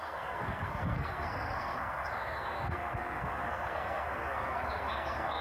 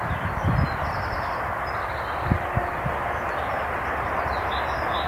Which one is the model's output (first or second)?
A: first